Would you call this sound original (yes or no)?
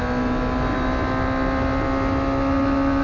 yes